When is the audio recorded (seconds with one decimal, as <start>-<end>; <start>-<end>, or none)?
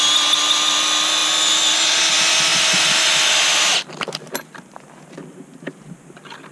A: 0.0-6.5